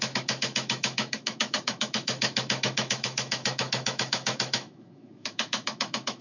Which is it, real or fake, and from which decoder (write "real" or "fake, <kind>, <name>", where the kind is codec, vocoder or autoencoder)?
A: fake, autoencoder, DAC-VAE